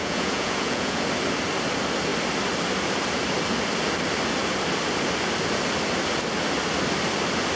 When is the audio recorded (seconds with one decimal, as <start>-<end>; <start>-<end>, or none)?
1.0-7.6